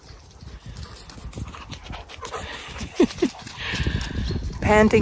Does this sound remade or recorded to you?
recorded